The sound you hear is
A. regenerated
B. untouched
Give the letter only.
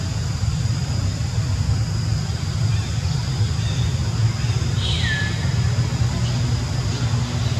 B